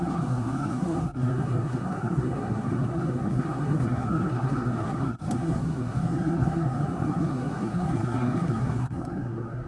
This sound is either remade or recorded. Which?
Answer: remade